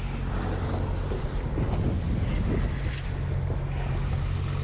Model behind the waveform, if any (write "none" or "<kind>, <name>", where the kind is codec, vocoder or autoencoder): none